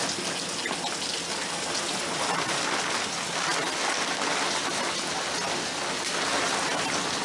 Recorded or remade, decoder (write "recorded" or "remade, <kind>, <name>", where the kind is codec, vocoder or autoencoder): recorded